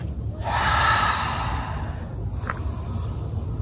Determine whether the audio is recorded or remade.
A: recorded